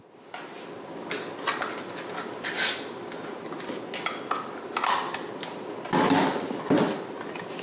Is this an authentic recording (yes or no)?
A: yes